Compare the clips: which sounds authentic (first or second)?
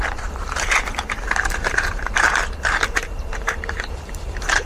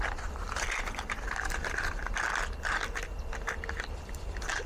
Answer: second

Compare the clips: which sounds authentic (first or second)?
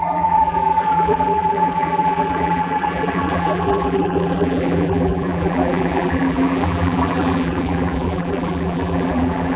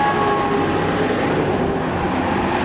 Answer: second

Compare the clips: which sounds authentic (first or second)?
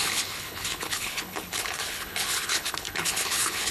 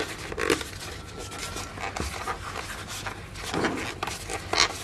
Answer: second